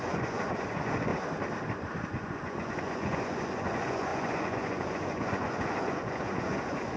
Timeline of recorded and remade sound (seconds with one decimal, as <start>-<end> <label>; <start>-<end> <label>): 0.0-1.1 remade; 1.1-2.1 recorded; 2.1-7.0 remade